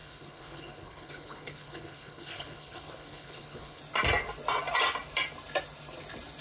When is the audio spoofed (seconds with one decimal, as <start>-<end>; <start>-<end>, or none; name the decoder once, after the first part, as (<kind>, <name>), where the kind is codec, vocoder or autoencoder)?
0.0-3.8 (codec, HILCodec)